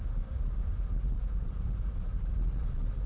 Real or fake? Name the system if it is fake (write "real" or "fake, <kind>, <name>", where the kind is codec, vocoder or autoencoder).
fake, vocoder, BigVGAN v2